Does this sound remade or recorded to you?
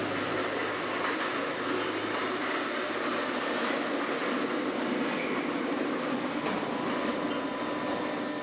recorded